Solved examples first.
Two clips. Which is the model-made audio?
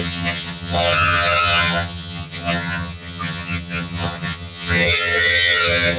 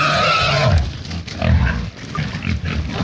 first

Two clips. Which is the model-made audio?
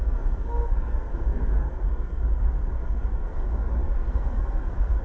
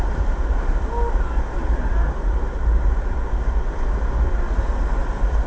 first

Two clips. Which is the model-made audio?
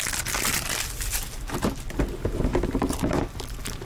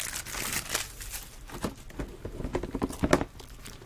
first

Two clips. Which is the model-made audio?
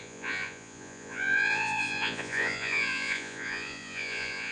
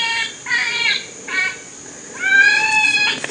first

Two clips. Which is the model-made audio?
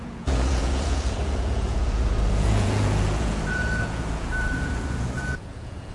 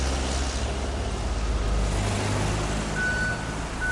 first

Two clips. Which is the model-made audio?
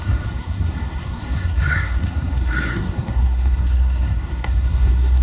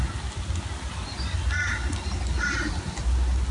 first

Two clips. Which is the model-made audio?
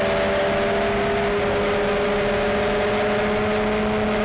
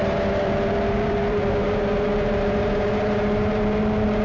second